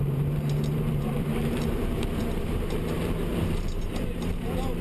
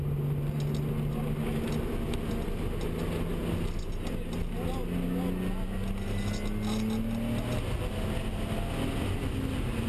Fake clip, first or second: first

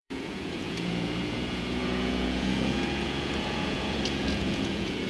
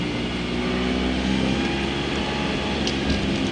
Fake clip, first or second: first